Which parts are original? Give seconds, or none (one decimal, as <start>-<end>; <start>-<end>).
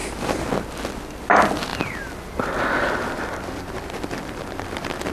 0.5-1.7